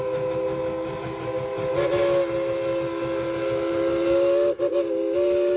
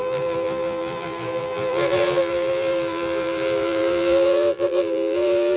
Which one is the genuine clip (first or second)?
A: first